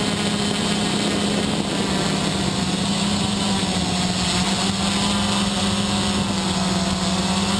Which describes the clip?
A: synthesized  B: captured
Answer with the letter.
B